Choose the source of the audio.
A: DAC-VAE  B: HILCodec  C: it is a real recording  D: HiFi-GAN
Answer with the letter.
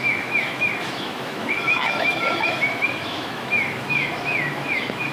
A